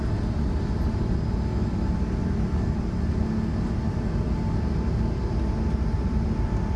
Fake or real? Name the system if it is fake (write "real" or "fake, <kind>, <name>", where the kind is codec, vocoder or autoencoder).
real